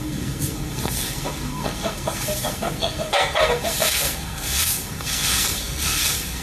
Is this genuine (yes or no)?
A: no